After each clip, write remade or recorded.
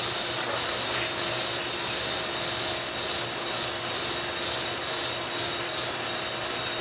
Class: recorded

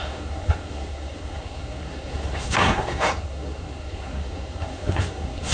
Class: remade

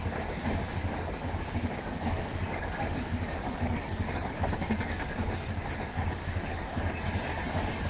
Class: remade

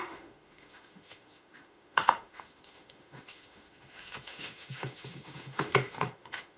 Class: remade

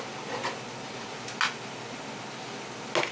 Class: recorded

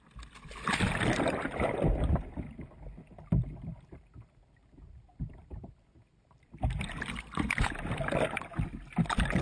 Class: recorded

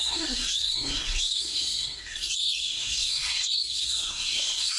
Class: remade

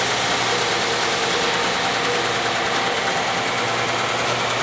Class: recorded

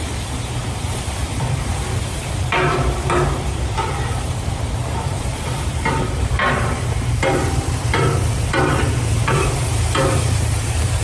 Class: remade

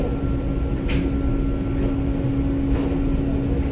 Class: recorded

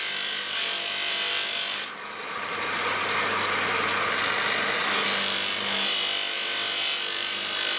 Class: recorded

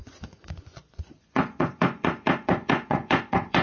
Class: remade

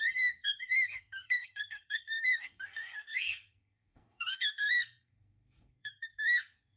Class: remade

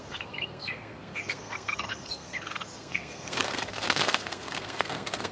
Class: remade